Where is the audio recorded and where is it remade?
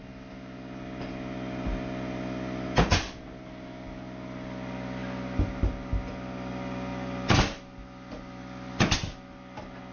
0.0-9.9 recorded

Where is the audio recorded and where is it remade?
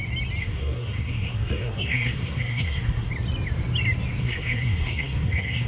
0.0-0.4 recorded; 0.4-3.1 remade; 3.1-4.2 recorded; 4.2-5.7 remade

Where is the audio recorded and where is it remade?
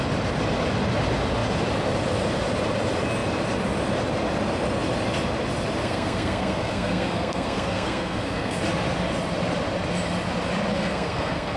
0.0-5.8 recorded; 5.8-8.6 remade; 8.6-10.7 recorded; 10.7-11.6 remade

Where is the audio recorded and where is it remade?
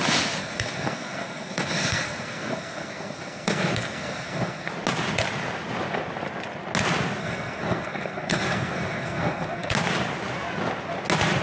0.0-0.4 recorded; 0.4-4.7 remade; 4.7-7.2 recorded; 7.2-9.7 remade; 9.7-11.4 recorded